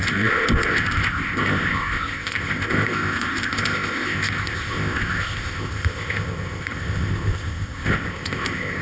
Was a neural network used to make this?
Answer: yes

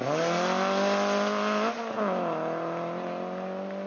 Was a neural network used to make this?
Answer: no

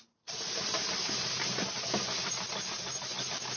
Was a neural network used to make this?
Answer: no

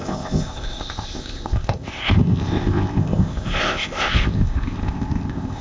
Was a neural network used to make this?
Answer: yes